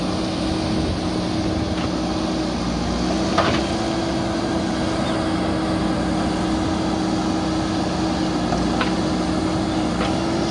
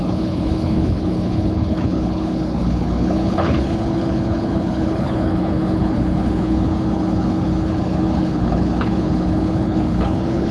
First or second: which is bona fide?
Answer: first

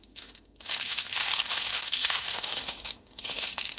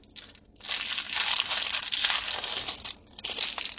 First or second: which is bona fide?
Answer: second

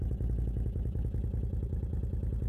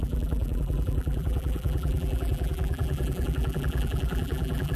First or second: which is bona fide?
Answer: first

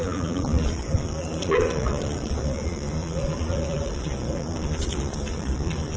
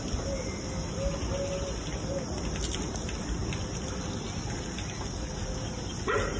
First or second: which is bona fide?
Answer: second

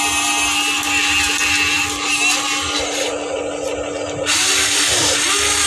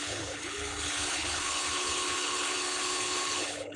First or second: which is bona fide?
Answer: first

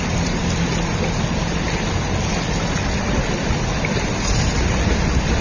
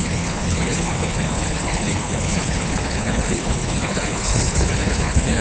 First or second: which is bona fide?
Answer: first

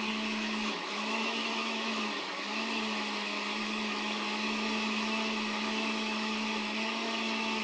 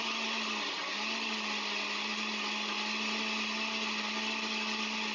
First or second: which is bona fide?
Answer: second